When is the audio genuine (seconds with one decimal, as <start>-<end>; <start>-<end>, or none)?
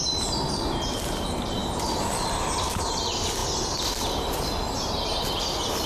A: 0.0-5.9